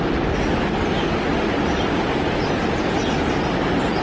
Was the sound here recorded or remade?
recorded